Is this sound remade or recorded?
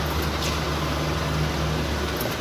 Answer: recorded